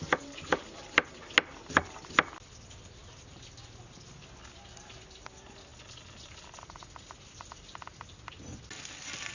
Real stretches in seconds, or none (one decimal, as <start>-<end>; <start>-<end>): 0.0-9.3